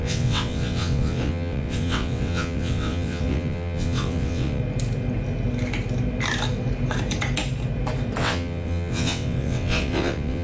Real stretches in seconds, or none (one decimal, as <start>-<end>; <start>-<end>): 4.6-8.2